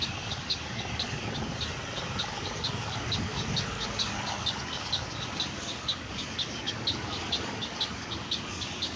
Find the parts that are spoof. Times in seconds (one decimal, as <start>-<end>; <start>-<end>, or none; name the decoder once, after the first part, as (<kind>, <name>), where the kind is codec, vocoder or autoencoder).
0.0-1.5 (codec, DAC); 2.2-9.0